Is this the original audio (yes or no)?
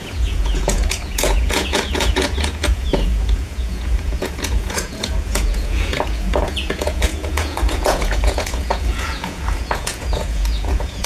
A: no